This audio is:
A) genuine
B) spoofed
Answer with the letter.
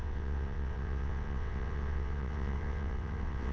B